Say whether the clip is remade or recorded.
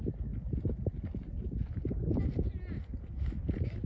recorded